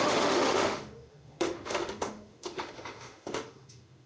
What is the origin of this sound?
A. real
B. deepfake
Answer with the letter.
B